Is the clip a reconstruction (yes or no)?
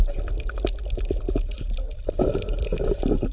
no